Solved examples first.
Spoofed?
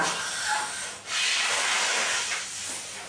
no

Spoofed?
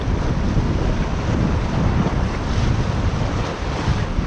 no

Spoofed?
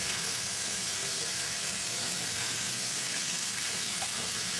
yes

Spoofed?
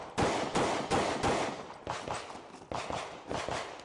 no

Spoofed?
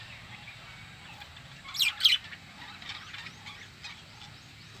no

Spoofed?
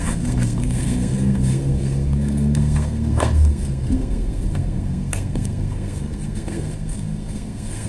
yes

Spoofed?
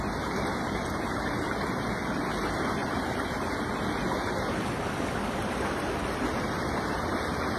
no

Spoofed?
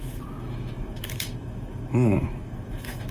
yes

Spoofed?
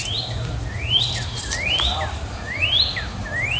no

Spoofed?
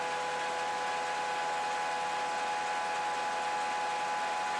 no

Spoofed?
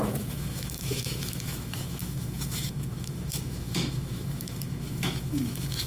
yes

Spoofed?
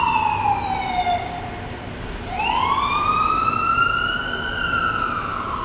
no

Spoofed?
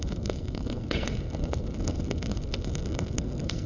yes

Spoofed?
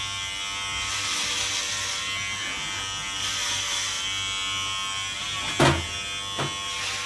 no